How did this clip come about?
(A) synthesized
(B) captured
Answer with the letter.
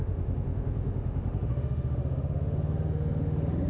A